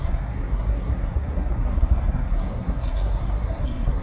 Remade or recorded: remade